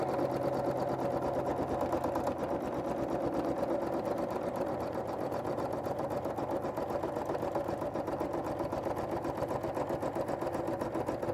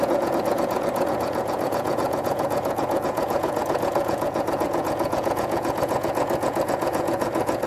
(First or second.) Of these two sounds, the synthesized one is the second